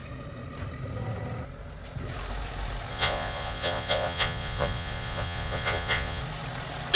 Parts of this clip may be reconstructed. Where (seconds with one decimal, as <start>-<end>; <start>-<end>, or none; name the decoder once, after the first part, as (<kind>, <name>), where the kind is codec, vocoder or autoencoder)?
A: 2.9-6.2 (vocoder, Vocos)